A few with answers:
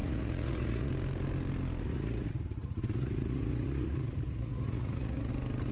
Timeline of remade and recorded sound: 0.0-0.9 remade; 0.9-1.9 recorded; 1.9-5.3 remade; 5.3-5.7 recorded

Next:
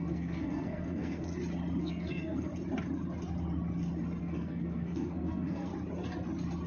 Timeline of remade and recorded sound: 0.0-1.3 remade; 1.3-1.8 recorded; 1.8-2.5 remade; 2.5-4.2 recorded; 4.2-5.7 remade; 5.7-6.7 recorded

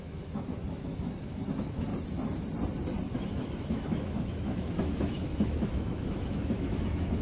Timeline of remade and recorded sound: 0.0-1.9 remade; 1.9-3.1 recorded; 3.1-7.2 remade